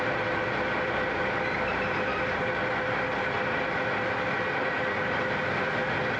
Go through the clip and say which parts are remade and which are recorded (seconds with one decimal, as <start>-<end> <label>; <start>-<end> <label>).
0.0-6.2 recorded